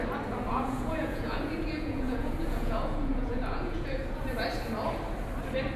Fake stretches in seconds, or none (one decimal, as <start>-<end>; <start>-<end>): 0.5-4.0